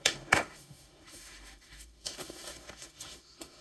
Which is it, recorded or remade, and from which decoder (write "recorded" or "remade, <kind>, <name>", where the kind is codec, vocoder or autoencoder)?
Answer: remade, autoencoder, DAC-VAE